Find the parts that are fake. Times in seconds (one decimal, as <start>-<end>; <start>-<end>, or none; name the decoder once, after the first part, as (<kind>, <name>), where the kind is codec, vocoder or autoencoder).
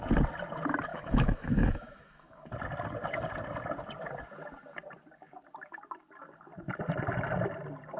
0.9-2.5 (autoencoder, DAC-VAE)